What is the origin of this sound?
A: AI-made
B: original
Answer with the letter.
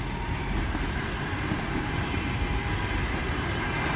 B